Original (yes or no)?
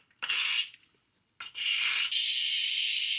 yes